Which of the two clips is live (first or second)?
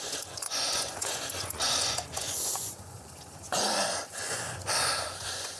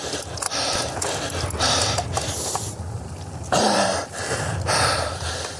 second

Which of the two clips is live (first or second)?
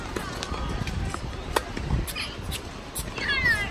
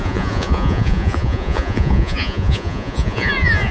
first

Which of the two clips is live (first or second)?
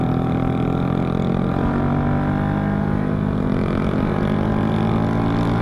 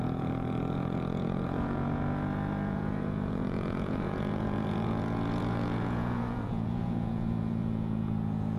first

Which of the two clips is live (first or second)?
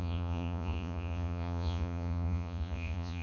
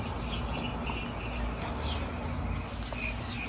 second